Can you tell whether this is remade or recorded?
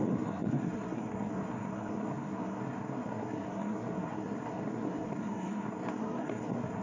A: remade